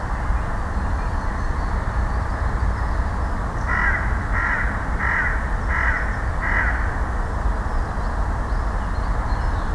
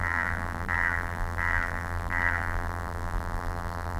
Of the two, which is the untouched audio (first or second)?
first